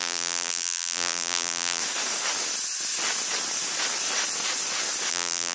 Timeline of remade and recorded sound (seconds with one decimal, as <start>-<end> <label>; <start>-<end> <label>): 0.0-1.8 remade; 1.8-5.1 recorded; 5.1-5.5 remade